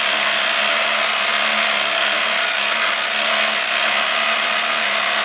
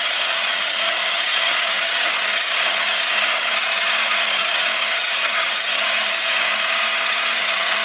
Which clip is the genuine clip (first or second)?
first